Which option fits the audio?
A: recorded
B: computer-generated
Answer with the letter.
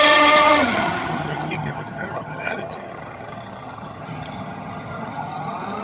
B